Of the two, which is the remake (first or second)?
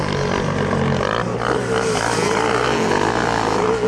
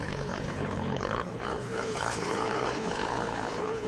second